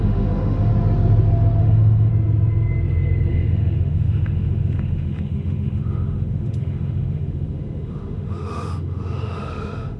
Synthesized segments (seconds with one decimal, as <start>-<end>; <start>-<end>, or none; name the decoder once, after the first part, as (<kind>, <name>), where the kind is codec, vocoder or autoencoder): 0.0-0.7 (autoencoder, DAC-VAE); 1.6-2.1; 3.3-10.0